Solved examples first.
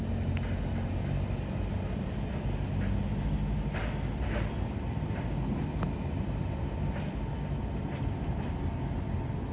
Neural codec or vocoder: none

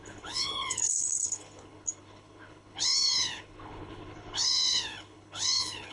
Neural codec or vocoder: codec, HILCodec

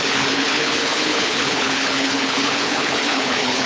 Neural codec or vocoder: codec, HILCodec